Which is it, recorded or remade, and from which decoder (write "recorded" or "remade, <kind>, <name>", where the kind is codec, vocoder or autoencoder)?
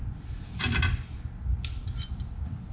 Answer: recorded